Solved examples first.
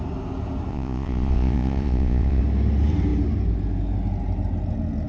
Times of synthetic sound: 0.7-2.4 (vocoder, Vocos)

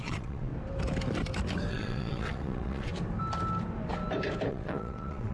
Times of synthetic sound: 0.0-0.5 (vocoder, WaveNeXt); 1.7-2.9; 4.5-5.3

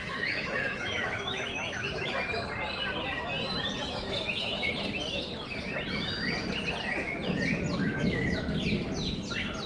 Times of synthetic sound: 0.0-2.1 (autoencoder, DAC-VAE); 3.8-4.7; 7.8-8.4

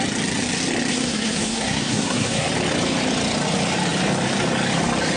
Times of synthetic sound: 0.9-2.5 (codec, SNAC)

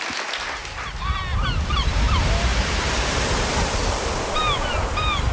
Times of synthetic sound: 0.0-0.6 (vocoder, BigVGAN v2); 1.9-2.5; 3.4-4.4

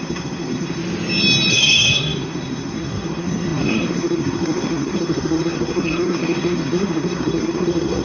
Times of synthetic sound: 0.0-0.8 (codec, SNAC); 1.5-8.0

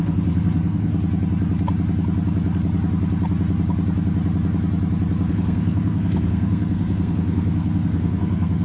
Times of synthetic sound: 0.0-0.9 (codec, SNAC); 5.3-8.6